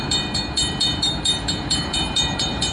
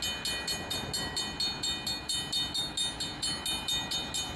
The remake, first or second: first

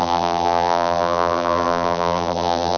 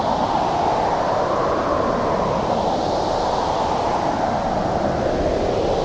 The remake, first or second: first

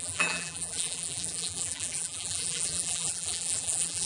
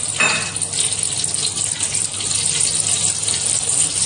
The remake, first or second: first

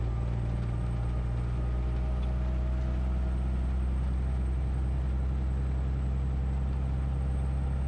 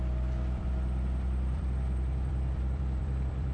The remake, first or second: second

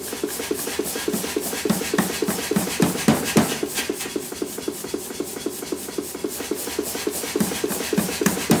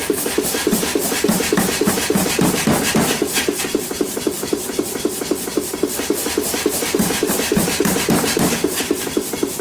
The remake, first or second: second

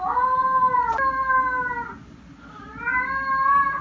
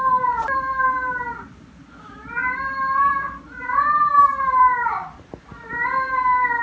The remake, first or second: second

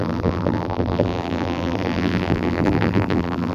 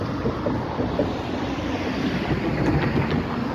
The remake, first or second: first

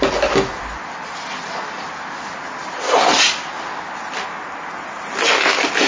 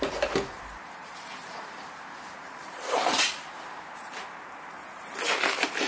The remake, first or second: second